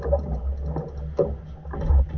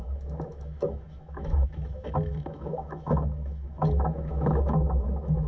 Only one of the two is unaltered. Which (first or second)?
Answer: first